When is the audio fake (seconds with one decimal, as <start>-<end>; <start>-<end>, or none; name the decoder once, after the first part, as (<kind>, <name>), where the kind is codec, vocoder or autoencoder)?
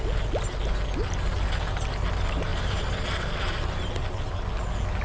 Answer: 2.5-3.9 (vocoder, BigVGAN v2)